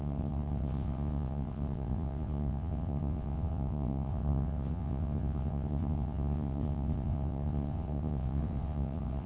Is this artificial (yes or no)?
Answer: yes